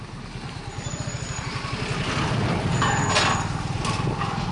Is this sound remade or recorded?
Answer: recorded